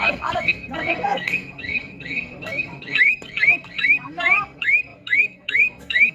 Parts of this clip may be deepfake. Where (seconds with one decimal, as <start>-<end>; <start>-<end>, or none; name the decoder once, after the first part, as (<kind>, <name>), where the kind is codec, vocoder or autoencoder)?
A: 0.0-6.1 (codec, SNAC)